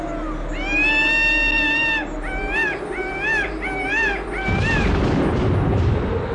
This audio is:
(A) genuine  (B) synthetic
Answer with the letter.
A